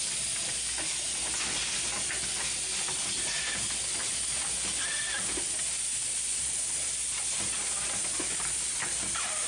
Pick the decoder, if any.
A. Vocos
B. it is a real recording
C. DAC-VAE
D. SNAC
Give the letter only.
B